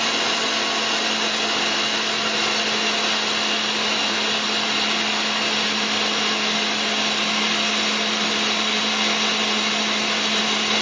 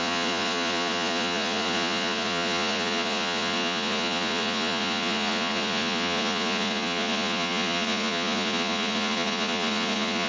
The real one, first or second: first